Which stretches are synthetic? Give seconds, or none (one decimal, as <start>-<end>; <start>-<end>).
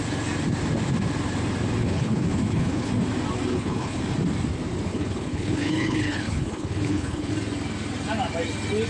1.8-2.9; 3.5-4.0; 4.9-7.3